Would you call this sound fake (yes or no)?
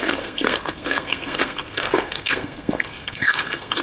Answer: yes